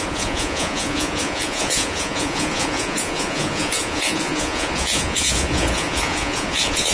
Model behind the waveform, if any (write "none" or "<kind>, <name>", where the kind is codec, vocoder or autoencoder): vocoder, Vocos